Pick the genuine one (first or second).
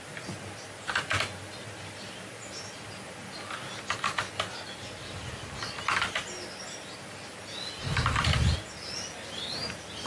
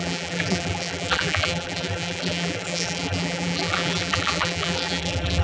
first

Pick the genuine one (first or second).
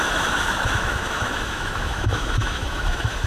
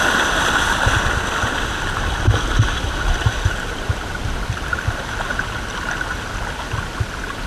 second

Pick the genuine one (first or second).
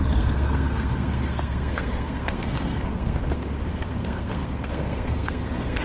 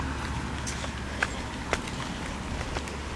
second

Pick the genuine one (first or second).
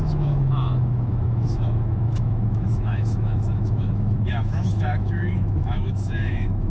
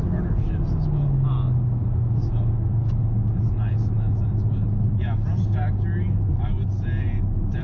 second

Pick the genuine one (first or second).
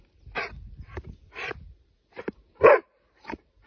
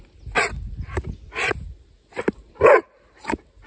second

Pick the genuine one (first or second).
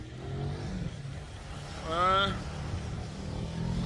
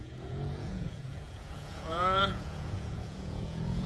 first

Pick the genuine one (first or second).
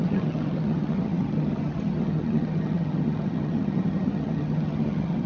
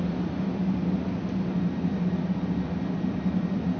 second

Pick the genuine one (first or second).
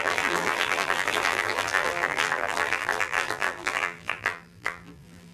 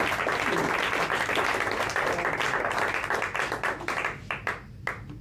second